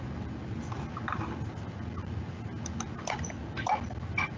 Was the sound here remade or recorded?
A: recorded